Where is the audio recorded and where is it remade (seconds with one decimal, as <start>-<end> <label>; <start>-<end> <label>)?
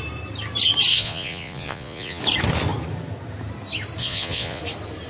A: 0.0-0.9 recorded; 0.9-2.2 remade; 2.2-4.0 recorded; 4.0-4.6 remade; 4.6-5.1 recorded